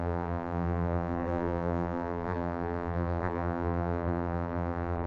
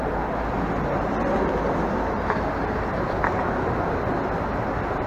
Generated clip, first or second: first